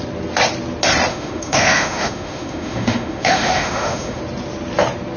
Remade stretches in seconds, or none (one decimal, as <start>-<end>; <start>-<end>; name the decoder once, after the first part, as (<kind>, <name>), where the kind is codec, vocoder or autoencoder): 1.1-4.2 (autoencoder, DAC-VAE)